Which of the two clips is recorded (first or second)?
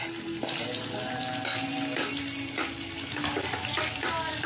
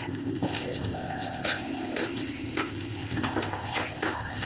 first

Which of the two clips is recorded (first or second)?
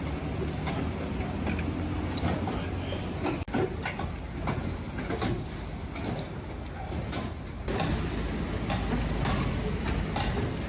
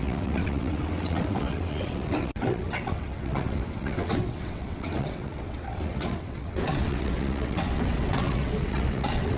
first